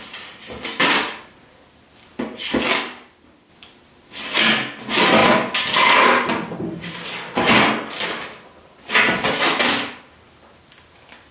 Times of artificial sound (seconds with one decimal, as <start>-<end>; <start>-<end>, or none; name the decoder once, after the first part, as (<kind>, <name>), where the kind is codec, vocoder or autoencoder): none